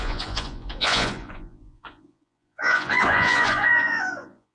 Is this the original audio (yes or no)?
no